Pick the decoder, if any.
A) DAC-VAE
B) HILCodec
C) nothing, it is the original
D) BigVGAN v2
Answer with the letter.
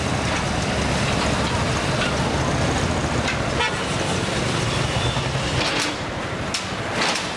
C